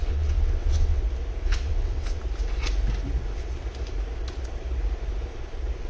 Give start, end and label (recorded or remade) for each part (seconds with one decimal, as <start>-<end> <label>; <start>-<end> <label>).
0.0-1.0 remade; 1.0-1.4 recorded; 1.4-2.2 remade; 2.2-5.9 recorded